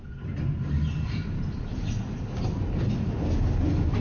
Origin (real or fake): real